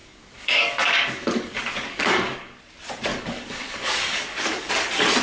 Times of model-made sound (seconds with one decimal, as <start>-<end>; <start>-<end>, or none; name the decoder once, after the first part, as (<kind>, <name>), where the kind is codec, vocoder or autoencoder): 0.0-2.6 (codec, DAC); 3.1-4.7